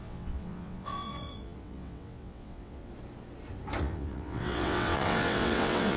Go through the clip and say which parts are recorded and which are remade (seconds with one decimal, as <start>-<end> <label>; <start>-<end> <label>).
0.0-2.9 remade; 2.9-3.8 recorded; 3.8-6.0 remade

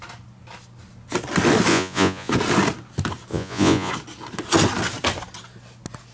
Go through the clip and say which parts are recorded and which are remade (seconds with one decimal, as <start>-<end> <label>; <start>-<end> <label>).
0.0-1.7 recorded; 1.7-2.3 remade; 2.3-3.3 recorded; 3.3-3.9 remade; 3.9-6.1 recorded

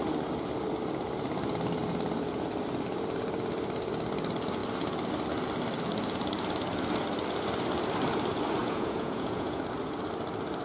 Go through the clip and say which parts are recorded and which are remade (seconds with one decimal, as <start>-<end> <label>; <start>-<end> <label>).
0.0-8.6 recorded; 8.6-9.6 remade; 9.6-10.6 recorded

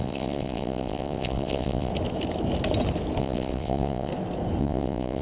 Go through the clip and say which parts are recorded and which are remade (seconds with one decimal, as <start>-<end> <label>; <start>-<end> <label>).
0.0-1.9 remade; 1.9-3.2 recorded; 3.2-4.1 remade; 4.1-4.6 recorded; 4.6-5.2 remade